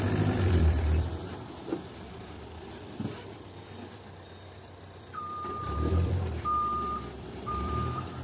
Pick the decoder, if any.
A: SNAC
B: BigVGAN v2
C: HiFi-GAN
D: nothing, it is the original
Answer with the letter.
B